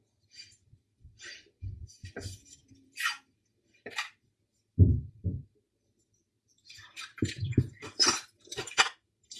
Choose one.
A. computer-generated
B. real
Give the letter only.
A